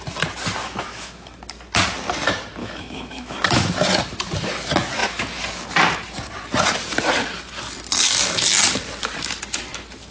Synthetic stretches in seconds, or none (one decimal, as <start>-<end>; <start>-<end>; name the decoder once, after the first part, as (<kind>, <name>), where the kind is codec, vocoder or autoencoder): 0.6-1.4 (autoencoder, DAC-VAE); 2.6-3.7